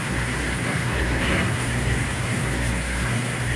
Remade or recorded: remade